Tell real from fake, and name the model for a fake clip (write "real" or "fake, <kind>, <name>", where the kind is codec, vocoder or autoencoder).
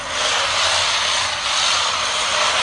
real